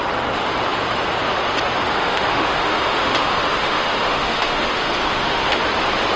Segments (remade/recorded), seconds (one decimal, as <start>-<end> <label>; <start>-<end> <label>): 0.0-1.9 recorded; 1.9-5.6 remade; 5.6-6.2 recorded